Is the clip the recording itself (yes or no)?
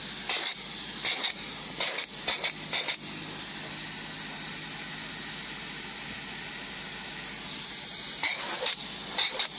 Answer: yes